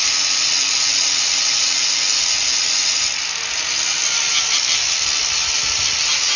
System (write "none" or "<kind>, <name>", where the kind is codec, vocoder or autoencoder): none